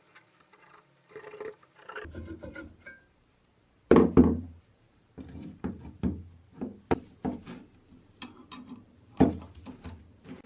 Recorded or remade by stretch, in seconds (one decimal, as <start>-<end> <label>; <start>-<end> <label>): 0.0-6.7 remade; 6.7-8.2 recorded; 8.2-10.5 remade